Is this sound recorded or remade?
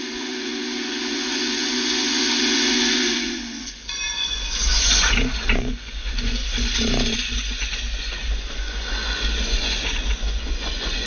remade